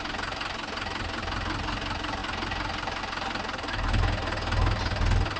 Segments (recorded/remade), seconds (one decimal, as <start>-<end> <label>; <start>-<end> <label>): 0.0-5.4 recorded